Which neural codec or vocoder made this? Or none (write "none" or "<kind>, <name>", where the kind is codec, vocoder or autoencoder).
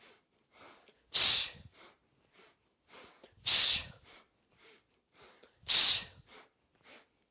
none